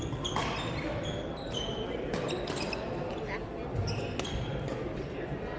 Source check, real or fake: real